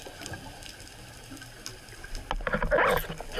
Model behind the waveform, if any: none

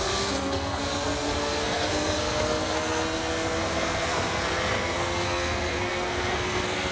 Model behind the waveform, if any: codec, SNAC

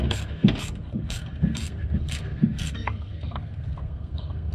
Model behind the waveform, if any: codec, SNAC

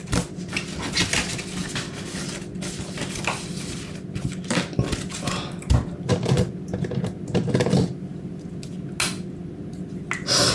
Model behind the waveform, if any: none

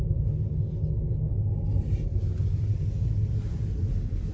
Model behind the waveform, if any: none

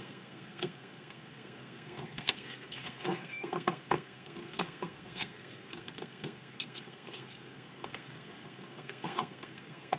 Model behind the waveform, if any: codec, SNAC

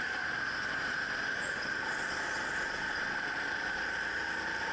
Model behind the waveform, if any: none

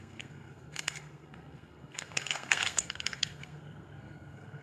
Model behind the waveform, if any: codec, SNAC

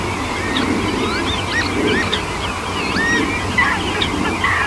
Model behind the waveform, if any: none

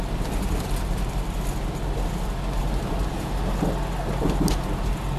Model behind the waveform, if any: none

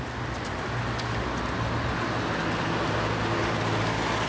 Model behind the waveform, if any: none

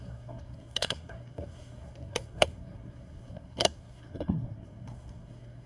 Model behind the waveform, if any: codec, SNAC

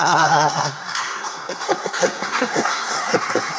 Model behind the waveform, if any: codec, SNAC